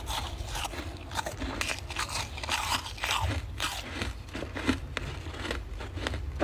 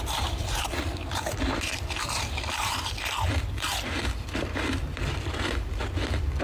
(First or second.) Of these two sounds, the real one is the first